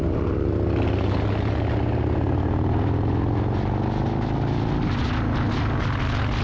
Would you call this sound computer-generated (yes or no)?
no